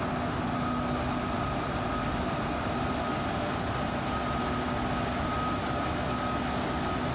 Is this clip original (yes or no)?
yes